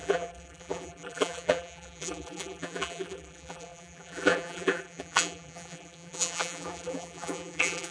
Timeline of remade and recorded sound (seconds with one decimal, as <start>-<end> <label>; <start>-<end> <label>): 0.0-7.9 remade